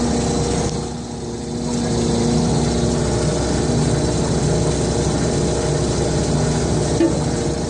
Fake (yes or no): no